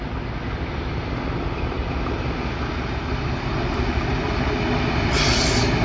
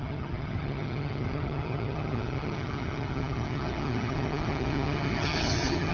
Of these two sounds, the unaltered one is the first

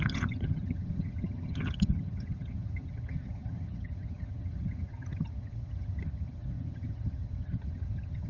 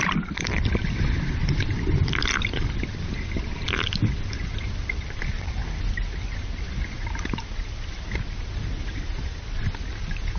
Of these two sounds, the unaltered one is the second